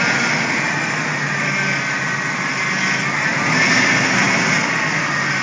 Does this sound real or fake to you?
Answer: real